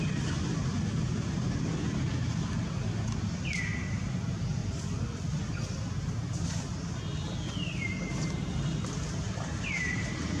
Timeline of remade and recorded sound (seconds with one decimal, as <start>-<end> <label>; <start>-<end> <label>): 0.0-10.4 recorded